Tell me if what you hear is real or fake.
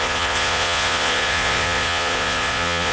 fake